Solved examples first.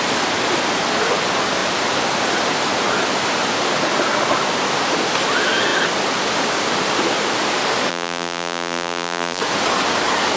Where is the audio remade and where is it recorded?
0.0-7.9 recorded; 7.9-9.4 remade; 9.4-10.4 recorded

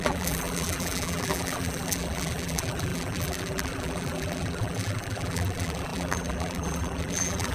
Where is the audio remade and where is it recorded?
0.0-7.5 remade